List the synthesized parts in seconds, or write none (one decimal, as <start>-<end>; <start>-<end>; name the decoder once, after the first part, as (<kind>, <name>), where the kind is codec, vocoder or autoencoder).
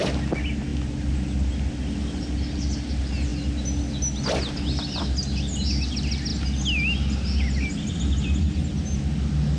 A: none